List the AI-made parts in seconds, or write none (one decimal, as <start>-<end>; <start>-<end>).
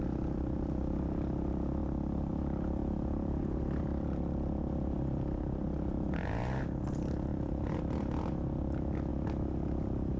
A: 2.8-3.4; 7.3-7.8